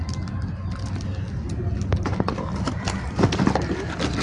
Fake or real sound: real